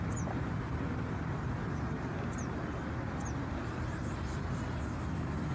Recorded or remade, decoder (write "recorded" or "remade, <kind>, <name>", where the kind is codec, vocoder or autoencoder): remade, vocoder, BigVGAN v2